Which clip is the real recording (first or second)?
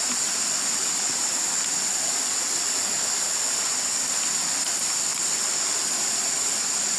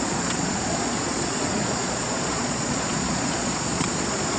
first